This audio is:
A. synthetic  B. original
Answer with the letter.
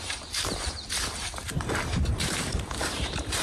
A